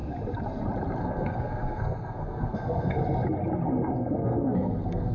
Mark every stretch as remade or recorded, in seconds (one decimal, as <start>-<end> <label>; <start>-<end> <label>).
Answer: 0.0-1.0 recorded; 1.0-3.0 remade; 3.0-3.7 recorded; 3.7-5.1 remade